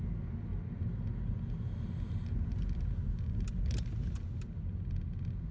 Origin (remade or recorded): recorded